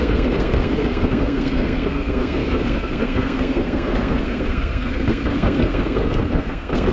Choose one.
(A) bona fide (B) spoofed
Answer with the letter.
B